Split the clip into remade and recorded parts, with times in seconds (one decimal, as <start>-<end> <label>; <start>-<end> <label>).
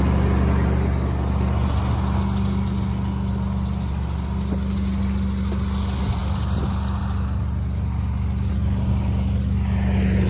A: 0.0-10.3 recorded